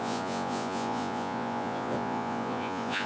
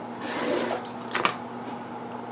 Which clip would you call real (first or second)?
second